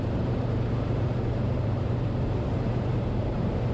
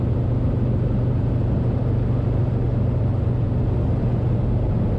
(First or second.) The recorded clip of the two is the second